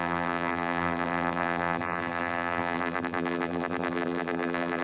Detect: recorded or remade remade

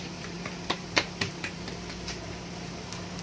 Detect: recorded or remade remade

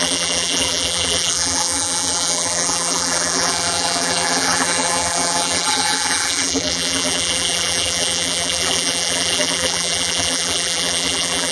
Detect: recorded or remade remade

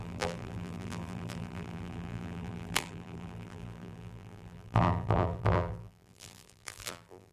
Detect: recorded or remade remade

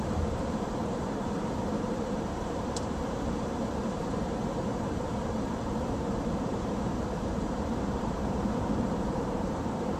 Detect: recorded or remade remade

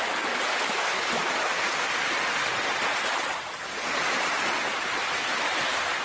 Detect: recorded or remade recorded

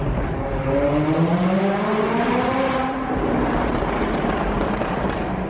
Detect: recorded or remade remade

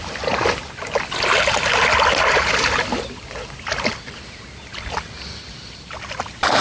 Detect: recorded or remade remade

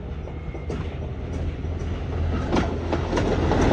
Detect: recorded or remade recorded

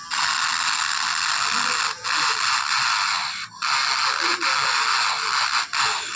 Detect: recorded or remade recorded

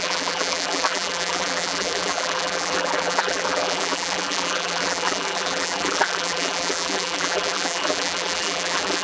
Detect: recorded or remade remade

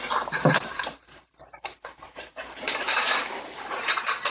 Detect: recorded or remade remade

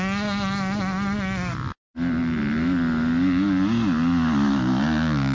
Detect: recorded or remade recorded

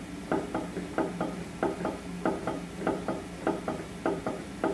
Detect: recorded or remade remade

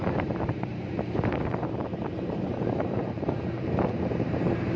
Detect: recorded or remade remade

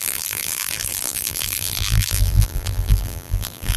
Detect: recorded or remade remade